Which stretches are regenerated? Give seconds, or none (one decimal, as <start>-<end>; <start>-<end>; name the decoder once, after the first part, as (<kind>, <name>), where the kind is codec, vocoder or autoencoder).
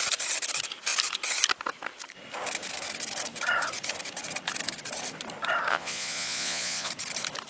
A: 5.7-6.9 (vocoder, Vocos)